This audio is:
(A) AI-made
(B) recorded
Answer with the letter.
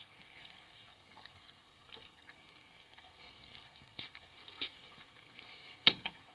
A